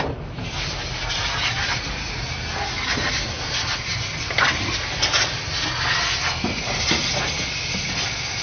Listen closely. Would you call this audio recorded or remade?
recorded